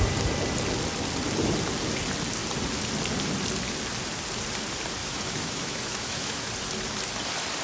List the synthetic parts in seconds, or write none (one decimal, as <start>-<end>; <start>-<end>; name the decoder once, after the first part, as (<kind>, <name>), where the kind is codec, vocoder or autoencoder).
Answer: 5.0-6.5 (autoencoder, DAC-VAE)